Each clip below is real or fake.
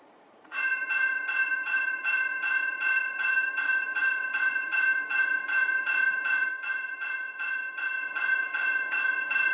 fake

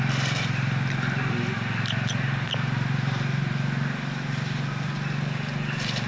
real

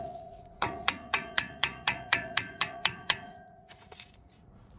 fake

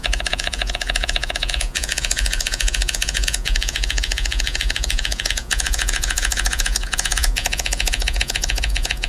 fake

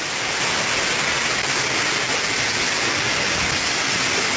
real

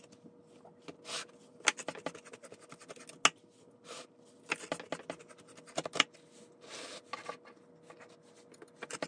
real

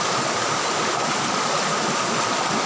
real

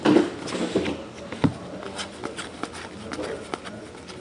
real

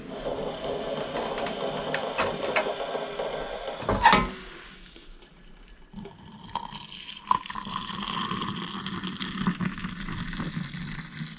real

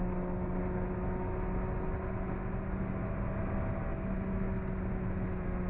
real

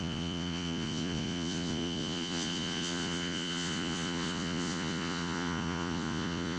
fake